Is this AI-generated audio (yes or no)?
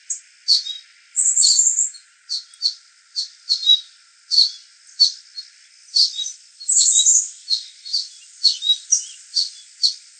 no